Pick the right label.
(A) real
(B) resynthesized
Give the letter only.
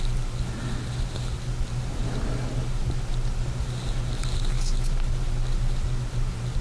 A